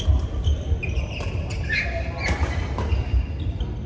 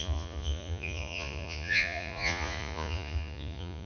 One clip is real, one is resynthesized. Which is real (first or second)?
first